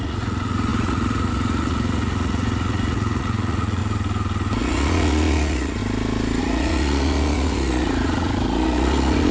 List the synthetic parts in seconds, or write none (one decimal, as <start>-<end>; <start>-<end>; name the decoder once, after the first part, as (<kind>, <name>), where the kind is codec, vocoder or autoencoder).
0.0-3.8 (vocoder, Vocos); 4.6-5.8; 6.4-9.3